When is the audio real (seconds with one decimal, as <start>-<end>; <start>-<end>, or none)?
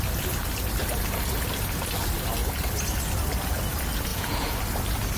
0.0-4.1; 4.6-5.2